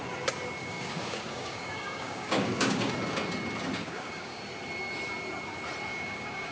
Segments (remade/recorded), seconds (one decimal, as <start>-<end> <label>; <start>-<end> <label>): 0.0-0.6 recorded; 0.6-2.9 remade; 2.9-3.8 recorded; 3.8-4.4 remade; 4.4-5.9 recorded; 5.9-6.5 remade